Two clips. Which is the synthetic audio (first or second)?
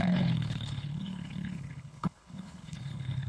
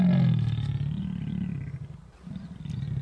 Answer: first